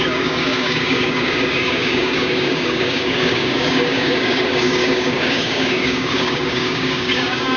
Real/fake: fake